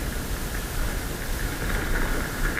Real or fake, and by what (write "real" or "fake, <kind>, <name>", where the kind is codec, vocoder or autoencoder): real